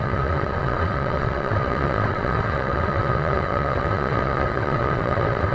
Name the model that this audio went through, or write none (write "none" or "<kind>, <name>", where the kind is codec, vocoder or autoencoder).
vocoder, WaveNeXt